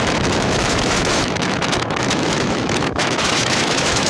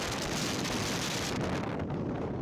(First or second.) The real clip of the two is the second